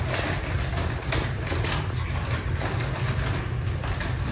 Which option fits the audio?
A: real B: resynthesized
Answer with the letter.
A